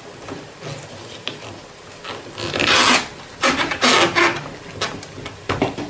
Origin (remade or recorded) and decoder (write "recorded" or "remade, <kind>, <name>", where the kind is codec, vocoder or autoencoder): recorded